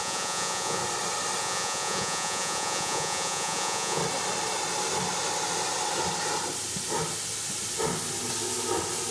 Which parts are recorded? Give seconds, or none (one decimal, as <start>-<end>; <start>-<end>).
0.8-1.4; 4.0-9.1